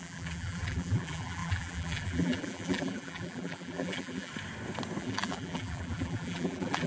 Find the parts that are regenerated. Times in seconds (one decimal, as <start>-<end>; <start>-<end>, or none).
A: 0.0-4.3; 5.0-6.9